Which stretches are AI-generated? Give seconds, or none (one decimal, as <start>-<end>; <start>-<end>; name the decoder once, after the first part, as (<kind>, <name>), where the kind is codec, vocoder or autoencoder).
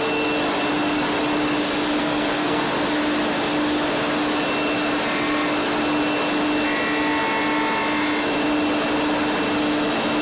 2.0-2.6 (codec, SNAC)